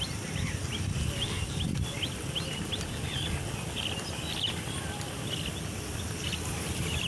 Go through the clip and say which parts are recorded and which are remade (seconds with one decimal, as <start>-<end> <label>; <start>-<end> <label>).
0.0-7.1 recorded